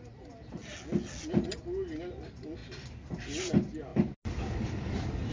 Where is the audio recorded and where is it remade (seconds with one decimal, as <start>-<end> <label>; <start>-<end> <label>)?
0.0-5.3 recorded